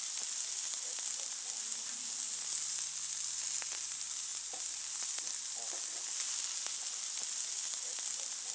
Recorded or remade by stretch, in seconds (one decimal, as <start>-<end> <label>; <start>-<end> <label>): 0.0-8.5 recorded